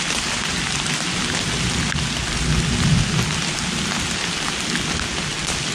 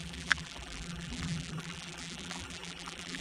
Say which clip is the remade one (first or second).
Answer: second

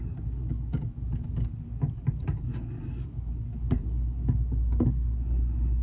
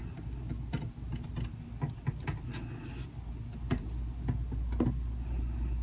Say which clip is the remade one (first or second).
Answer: first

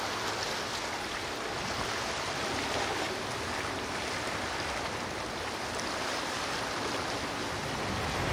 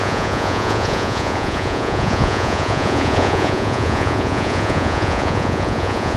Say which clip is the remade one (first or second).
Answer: second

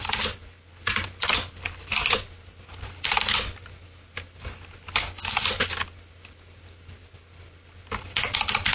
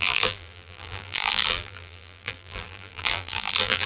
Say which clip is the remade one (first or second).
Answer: second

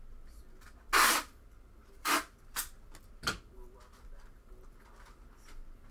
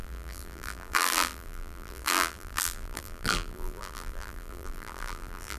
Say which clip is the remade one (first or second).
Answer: second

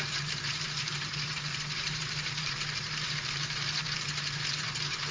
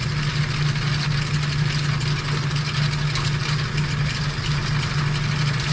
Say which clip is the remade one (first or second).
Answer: first